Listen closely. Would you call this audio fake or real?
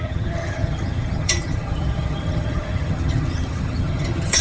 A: fake